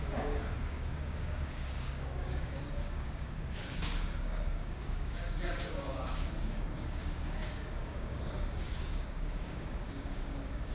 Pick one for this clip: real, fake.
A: fake